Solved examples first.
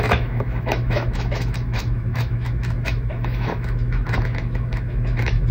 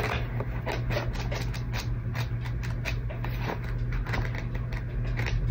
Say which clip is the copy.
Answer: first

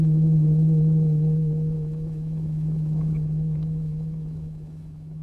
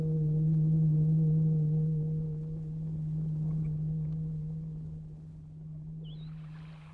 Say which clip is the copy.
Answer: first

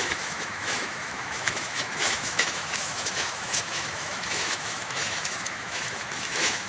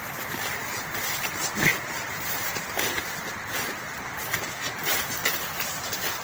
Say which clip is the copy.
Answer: first